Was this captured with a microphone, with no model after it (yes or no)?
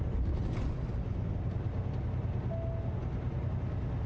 yes